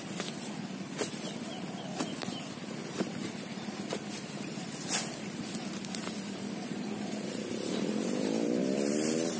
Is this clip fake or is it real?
fake